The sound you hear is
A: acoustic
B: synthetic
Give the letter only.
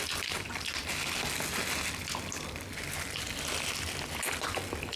A